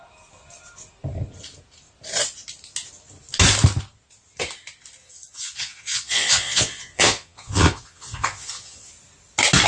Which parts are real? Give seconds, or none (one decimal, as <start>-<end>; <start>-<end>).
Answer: 0.0-5.0; 8.9-9.7

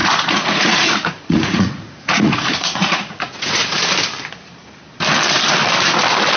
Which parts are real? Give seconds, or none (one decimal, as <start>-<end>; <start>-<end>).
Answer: 3.8-6.4

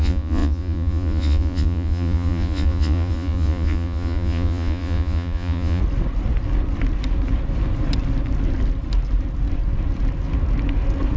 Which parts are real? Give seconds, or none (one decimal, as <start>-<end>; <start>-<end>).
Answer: 5.8-11.2